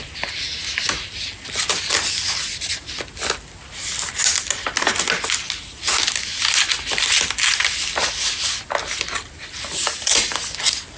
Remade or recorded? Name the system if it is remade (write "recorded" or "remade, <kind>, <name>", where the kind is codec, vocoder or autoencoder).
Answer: recorded